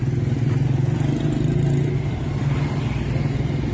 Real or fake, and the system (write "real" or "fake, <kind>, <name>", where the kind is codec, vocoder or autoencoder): real